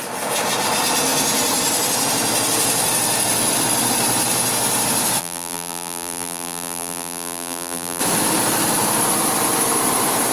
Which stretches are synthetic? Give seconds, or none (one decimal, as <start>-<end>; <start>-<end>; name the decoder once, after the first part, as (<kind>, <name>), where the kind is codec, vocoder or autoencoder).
5.2-8.0 (vocoder, BigVGAN v2)